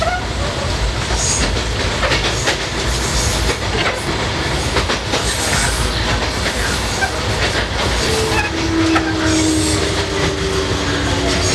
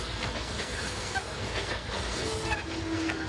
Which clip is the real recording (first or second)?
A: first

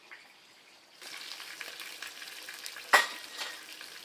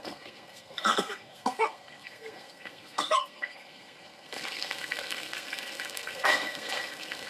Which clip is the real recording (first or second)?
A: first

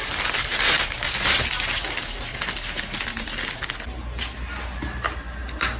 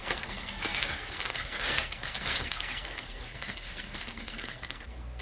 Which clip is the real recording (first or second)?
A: first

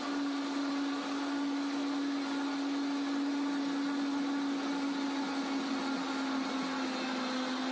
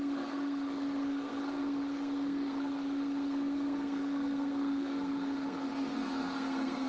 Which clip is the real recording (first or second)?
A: first